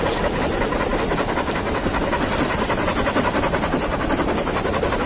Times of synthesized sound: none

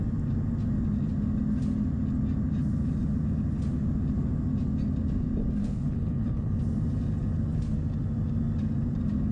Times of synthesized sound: 5.6-6.6 (codec, HILCodec)

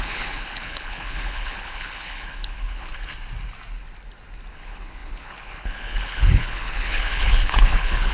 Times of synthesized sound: 0.0-3.1 (codec, HILCodec); 4.5-8.1

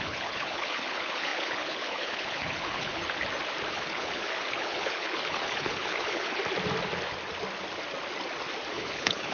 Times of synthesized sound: 0.0-3.0 (codec, HILCodec); 3.7-6.4; 8.7-9.3

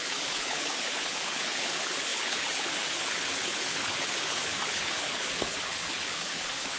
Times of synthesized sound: 0.0-6.8 (codec, HILCodec)

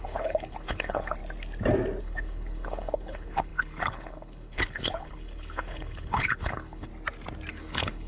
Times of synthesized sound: 0.0-1.2 (codec, HILCodec); 2.0-6.9; 7.5-8.1

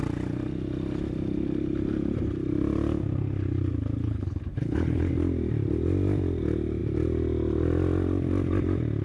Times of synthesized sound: 4.0-5.1 (codec, HILCodec)